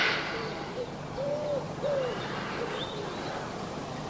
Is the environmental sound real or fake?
real